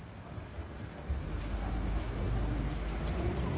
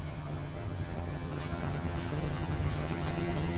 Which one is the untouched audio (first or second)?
first